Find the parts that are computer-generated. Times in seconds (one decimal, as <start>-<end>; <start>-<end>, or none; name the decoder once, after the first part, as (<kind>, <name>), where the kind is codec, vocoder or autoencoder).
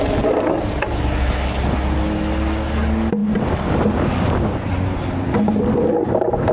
none